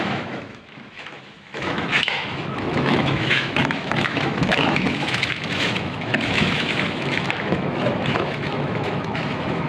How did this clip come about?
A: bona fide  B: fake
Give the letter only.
B